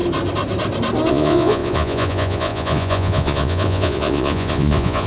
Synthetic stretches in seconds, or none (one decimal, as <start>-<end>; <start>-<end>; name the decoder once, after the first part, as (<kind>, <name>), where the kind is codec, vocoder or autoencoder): 1.1-5.1 (vocoder, Vocos)

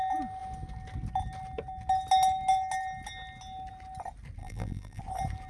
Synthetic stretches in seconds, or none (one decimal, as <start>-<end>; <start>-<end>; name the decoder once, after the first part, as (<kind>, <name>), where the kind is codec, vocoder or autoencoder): 4.4-5.0 (vocoder, BigVGAN v2)

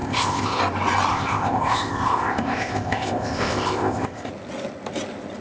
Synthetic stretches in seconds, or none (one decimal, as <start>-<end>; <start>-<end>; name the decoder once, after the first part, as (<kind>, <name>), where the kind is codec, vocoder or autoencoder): 0.0-0.6 (codec, ZipCodec); 1.1-4.3

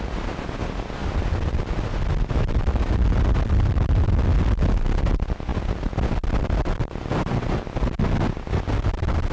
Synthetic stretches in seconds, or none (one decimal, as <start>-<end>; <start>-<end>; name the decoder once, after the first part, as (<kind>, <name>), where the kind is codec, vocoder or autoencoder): none

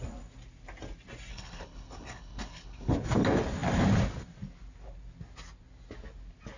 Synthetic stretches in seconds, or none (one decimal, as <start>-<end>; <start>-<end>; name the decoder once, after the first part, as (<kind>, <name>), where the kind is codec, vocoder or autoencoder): 1.3-2.9 (codec, HILCodec)

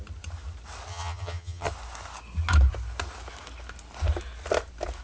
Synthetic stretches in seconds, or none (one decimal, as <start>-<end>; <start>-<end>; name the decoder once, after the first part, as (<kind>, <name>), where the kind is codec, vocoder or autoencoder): 0.9-1.7 (vocoder, HiFi-GAN)

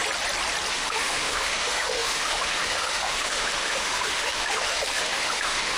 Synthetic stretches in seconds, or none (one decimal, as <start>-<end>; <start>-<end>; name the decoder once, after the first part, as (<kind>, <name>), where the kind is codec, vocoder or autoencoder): 0.7-5.8 (autoencoder, DAC-VAE)

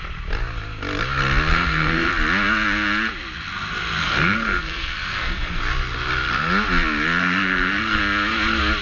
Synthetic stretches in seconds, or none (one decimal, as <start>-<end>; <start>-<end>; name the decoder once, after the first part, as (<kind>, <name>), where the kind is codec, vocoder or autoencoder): 1.5-2.1 (codec, SNAC); 4.0-5.6; 7.2-8.0